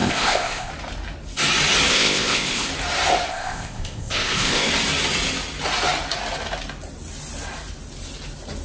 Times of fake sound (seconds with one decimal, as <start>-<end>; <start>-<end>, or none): 0.0-0.7; 1.9-2.7; 3.3-4.7